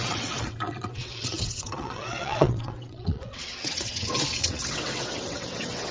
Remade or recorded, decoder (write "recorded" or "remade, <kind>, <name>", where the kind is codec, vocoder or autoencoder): remade, vocoder, WaveNeXt